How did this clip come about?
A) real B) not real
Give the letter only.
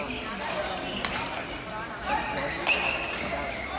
A